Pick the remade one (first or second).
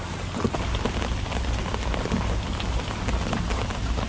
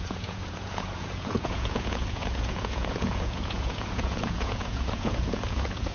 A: second